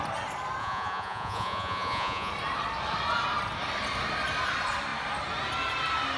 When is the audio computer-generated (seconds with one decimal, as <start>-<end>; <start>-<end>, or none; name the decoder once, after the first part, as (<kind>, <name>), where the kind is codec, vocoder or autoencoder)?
0.6-2.3 (vocoder, Vocos)